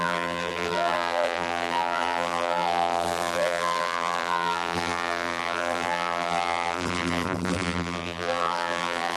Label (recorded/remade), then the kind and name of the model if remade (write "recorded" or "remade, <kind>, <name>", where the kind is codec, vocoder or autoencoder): remade, vocoder, BigVGAN v2